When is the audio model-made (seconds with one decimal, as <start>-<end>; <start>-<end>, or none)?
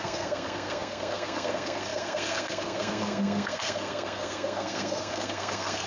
0.0-5.9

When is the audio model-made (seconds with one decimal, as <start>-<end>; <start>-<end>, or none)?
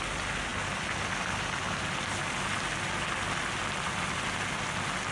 none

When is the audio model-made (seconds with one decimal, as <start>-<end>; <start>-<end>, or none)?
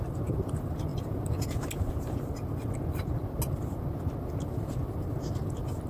none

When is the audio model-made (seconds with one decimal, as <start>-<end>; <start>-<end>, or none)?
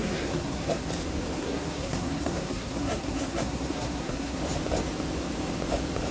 0.0-0.8; 1.4-4.4